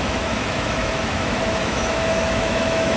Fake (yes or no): yes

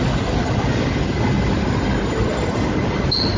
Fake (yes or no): no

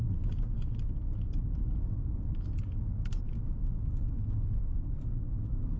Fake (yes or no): no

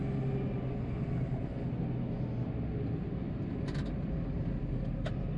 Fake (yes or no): no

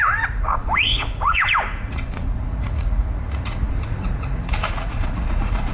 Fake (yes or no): yes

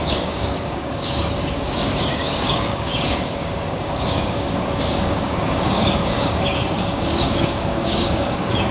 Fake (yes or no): yes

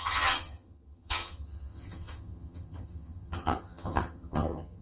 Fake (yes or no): yes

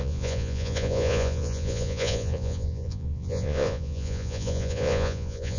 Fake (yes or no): yes